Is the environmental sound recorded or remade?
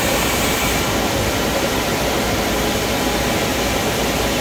recorded